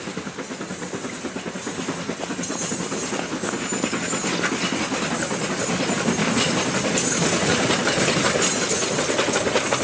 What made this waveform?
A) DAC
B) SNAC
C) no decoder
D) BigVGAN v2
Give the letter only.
C